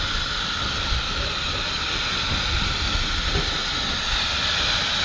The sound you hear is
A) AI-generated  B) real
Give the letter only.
B